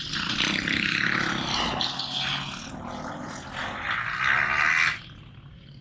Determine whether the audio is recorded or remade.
recorded